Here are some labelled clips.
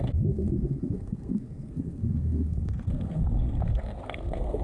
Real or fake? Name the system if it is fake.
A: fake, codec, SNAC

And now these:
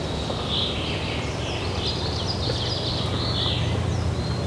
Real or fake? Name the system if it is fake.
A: real